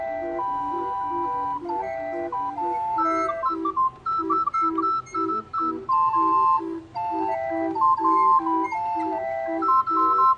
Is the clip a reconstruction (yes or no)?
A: no